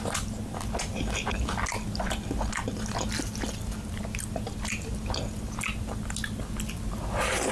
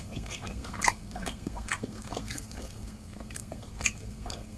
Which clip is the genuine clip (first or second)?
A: first